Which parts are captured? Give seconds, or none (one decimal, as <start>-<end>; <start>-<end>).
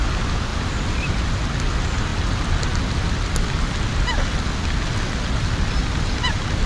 0.0-0.5; 1.2-5.8